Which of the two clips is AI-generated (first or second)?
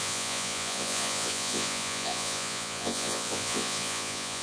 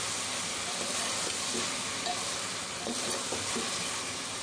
first